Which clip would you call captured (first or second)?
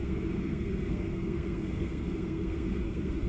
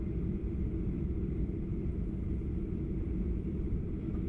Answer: second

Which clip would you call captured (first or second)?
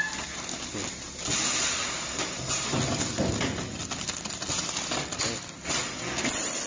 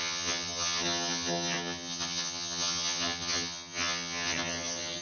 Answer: first